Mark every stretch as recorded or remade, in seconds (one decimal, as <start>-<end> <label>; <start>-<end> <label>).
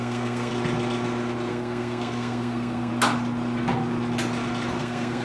0.0-0.5 remade; 0.5-1.5 recorded; 1.5-2.9 remade; 2.9-4.8 recorded; 4.8-5.2 remade